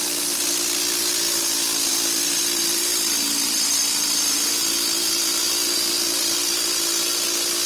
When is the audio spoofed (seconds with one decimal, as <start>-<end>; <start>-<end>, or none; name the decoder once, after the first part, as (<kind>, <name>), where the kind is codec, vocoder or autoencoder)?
none